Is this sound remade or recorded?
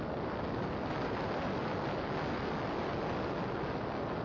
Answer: recorded